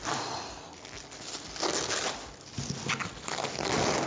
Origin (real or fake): real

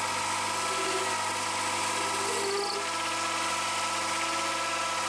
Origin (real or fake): real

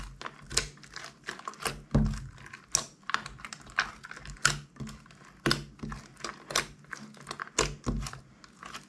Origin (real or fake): real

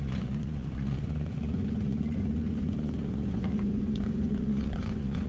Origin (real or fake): fake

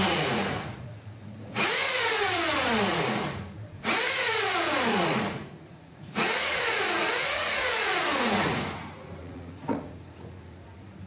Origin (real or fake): fake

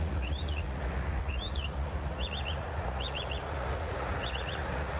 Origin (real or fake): fake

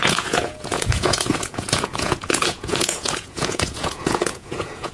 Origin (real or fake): fake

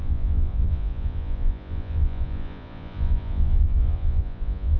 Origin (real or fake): fake